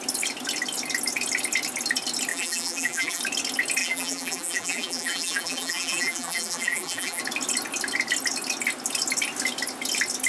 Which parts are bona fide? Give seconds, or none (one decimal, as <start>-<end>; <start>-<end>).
0.0-2.3; 3.2-3.8; 7.2-10.3

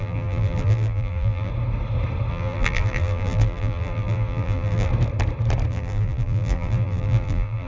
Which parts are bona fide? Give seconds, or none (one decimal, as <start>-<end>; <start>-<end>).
1.5-2.3; 4.9-5.7